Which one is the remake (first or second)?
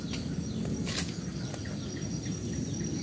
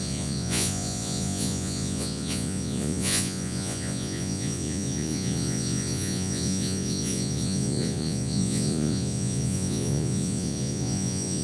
second